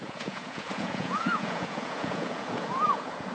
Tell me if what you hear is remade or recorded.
remade